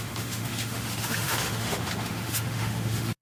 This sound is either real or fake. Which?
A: fake